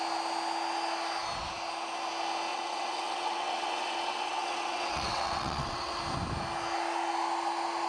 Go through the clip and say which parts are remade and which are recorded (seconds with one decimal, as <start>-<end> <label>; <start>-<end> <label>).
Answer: 0.0-2.5 recorded; 2.5-6.0 remade; 6.0-7.9 recorded